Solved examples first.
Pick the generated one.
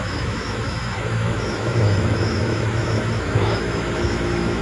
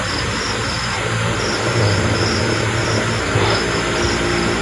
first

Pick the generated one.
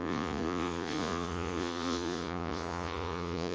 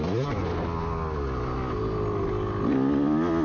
first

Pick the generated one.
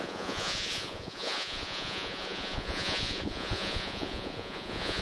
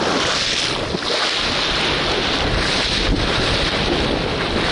first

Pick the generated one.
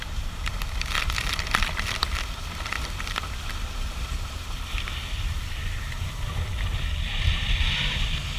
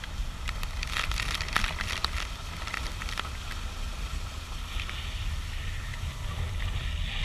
first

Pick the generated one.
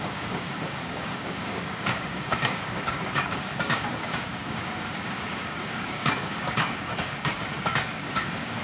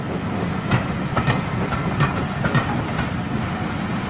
first